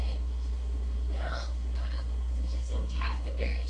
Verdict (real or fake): fake